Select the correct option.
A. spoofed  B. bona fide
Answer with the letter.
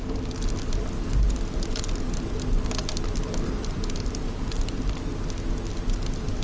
B